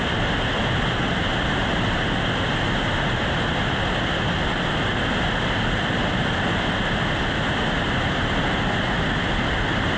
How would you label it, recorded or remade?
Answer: recorded